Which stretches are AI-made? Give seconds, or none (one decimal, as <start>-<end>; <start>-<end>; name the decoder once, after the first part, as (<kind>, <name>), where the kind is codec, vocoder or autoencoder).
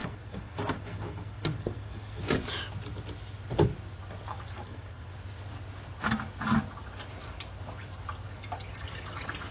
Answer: 0.0-2.2 (codec, SNAC); 4.3-5.1